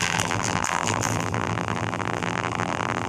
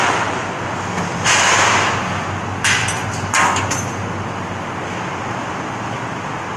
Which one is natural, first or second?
second